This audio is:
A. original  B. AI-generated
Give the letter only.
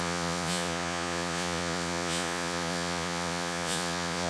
B